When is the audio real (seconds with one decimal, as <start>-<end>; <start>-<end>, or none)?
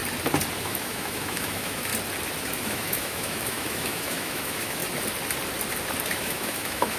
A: 0.0-0.6; 1.9-2.4; 4.8-6.1